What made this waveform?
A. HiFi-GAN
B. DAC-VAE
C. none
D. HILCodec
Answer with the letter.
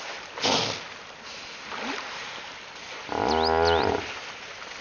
C